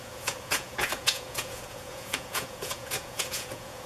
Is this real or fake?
fake